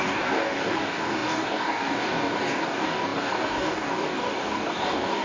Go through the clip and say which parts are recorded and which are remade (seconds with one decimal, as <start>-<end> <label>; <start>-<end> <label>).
0.0-5.2 remade